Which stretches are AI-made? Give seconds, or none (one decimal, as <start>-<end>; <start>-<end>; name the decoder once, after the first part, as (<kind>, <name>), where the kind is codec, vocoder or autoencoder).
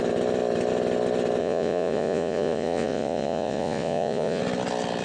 1.4-4.4 (vocoder, Vocos)